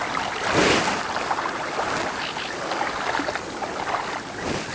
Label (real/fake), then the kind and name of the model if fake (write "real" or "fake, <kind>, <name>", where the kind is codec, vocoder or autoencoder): real